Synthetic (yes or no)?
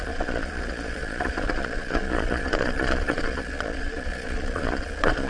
yes